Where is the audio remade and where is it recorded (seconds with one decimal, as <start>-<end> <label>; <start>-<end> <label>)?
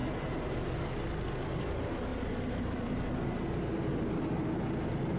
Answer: 0.0-5.2 recorded